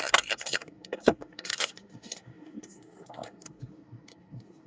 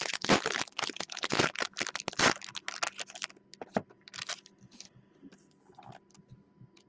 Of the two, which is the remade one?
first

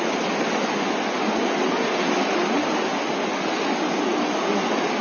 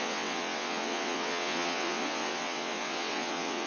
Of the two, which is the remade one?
second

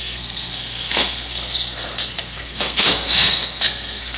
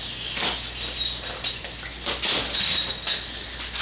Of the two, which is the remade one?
first